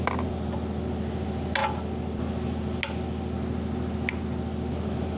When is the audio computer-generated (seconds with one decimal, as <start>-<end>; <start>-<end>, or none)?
none